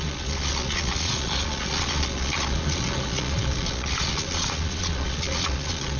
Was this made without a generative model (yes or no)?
no